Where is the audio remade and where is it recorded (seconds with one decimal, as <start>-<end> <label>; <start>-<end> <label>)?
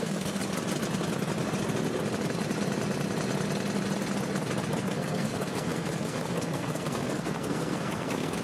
0.0-0.4 remade; 0.4-4.8 recorded; 4.8-8.4 remade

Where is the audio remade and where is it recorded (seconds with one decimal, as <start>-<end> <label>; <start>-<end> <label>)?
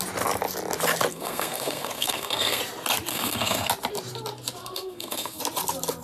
0.0-1.1 recorded; 1.1-2.6 remade; 2.6-3.1 recorded; 3.1-3.7 remade; 3.7-4.6 recorded; 4.6-5.4 remade; 5.4-6.0 recorded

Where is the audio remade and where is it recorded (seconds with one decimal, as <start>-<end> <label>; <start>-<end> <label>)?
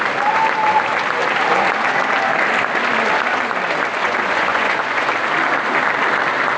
0.0-4.0 recorded; 4.0-5.1 remade; 5.1-6.6 recorded